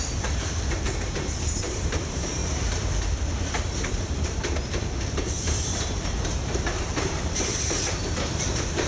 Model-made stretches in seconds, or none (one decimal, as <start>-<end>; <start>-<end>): 0.0-2.4; 3.9-8.9